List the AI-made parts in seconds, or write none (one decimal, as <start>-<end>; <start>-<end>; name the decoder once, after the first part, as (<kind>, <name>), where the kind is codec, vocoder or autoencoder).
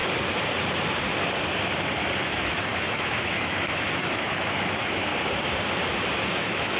2.2-5.1 (autoencoder, DAC-VAE); 6.2-6.8